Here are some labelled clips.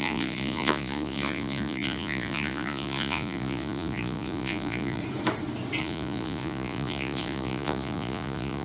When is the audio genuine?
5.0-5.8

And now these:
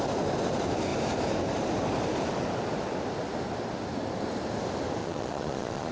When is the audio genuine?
0.0-5.0

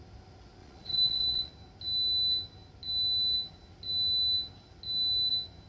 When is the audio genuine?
0.0-0.6; 1.5-5.7